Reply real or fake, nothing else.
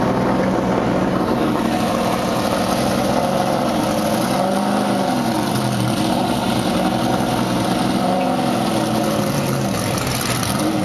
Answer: real